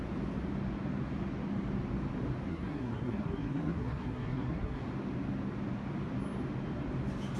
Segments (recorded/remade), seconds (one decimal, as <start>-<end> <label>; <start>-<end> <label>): 0.0-2.5 recorded; 2.5-4.8 remade; 4.8-7.4 recorded